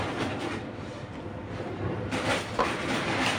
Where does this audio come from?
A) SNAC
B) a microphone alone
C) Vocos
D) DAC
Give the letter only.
B